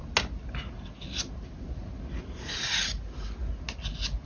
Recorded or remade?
recorded